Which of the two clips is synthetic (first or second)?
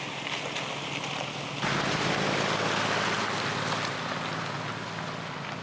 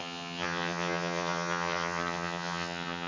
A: second